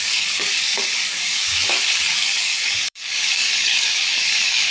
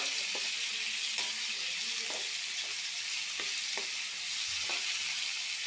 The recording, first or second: second